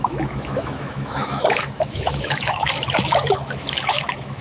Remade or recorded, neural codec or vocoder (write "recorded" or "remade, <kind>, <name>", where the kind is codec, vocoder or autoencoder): remade, autoencoder, DAC-VAE